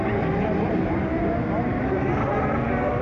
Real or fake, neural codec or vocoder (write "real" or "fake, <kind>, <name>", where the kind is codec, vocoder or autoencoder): fake, vocoder, BigVGAN v2